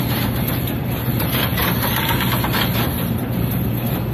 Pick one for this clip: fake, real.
fake